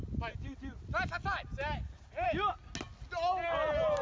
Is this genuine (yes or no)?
yes